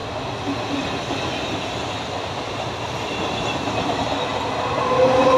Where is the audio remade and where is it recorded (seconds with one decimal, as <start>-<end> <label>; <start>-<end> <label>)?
0.0-5.4 recorded